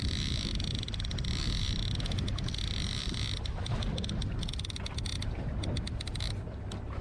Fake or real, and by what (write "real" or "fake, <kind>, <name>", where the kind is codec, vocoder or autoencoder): real